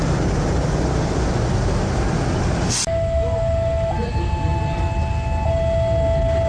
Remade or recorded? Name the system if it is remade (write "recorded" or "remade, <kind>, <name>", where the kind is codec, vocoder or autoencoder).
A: recorded